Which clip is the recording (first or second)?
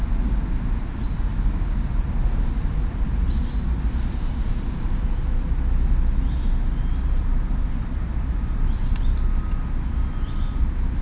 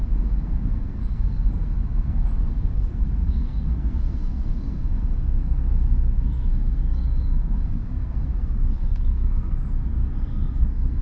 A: first